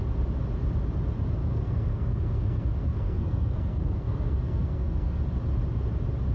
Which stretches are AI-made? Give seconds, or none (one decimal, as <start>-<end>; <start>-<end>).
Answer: 1.4-5.2